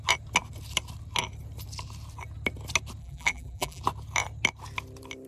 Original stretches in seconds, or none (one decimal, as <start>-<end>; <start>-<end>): 0.0-3.0; 3.8-5.3